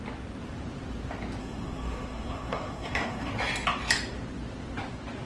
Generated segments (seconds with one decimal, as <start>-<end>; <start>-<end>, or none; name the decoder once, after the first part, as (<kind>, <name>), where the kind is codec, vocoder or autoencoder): 1.4-3.3 (codec, SNAC)